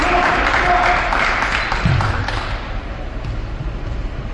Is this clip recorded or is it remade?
recorded